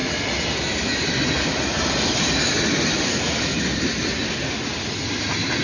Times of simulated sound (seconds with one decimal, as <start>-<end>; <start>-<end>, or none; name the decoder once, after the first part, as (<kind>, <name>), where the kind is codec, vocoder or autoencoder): none